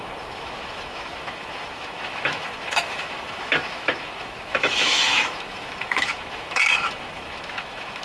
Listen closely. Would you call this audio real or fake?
fake